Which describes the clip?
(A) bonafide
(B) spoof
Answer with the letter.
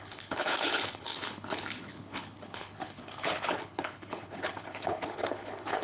B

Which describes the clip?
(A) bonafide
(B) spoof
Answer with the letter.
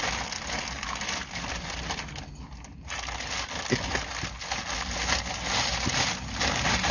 A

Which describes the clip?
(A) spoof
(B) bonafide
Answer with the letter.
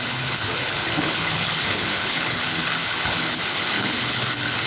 A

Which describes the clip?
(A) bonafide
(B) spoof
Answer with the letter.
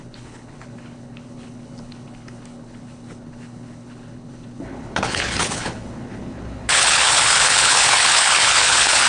B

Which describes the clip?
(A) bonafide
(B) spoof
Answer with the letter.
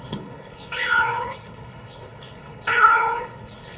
B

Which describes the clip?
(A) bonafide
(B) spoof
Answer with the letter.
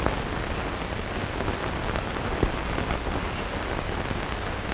A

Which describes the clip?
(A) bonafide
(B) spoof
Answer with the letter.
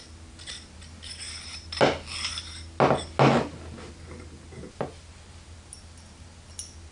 A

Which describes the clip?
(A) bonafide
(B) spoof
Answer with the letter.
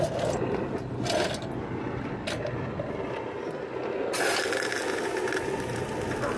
A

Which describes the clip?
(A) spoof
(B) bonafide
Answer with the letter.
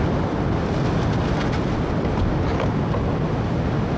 B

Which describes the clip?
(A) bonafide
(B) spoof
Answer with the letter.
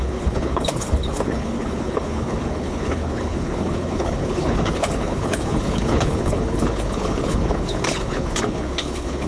B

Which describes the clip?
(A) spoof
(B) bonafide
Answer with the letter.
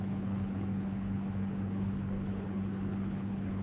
A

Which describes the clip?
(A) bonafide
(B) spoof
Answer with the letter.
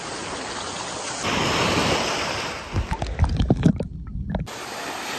A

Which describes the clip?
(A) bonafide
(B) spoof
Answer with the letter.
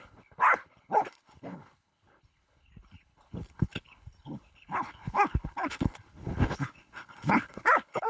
B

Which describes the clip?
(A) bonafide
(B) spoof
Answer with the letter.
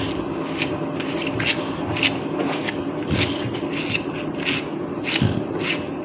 A